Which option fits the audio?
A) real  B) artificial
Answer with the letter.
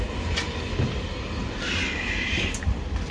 A